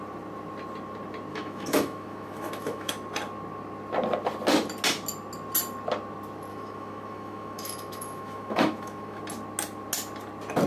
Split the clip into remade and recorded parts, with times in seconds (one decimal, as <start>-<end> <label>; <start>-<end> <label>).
0.0-1.3 recorded; 1.3-2.9 remade; 2.9-6.5 recorded; 6.5-9.2 remade; 9.2-10.7 recorded